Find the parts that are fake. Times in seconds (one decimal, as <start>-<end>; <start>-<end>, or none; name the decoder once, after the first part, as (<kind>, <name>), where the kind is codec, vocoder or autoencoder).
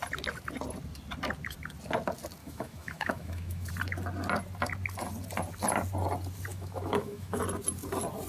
2.4-3.7 (autoencoder, DAC-VAE); 6.5-7.4